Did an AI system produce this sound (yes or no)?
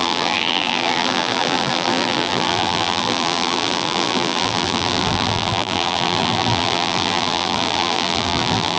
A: yes